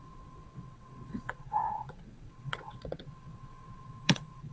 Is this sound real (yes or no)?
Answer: no